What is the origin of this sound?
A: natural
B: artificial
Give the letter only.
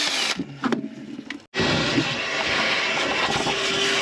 A